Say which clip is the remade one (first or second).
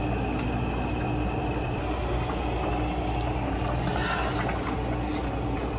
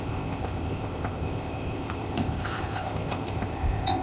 second